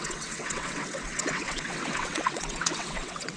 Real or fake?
fake